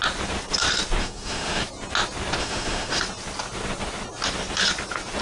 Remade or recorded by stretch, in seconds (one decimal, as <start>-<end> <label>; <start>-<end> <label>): 0.0-1.0 recorded; 1.0-1.6 remade; 1.6-2.4 recorded; 2.4-3.0 remade; 3.0-5.2 recorded